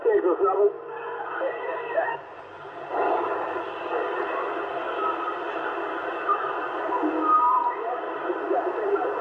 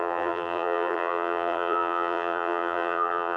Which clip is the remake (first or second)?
second